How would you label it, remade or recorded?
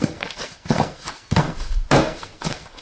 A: remade